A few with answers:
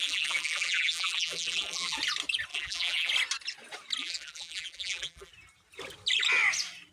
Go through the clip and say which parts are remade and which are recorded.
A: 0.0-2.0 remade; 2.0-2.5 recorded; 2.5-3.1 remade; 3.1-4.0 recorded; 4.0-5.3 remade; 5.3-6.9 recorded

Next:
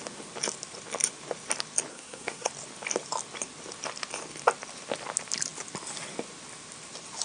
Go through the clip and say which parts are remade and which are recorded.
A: 0.0-1.9 recorded; 1.9-2.5 remade; 2.5-7.2 recorded

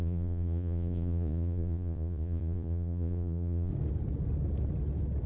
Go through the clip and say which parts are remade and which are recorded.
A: 0.0-3.7 remade; 3.7-5.3 recorded